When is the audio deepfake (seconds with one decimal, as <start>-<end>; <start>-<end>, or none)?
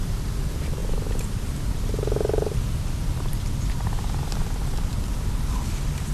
0.0-6.1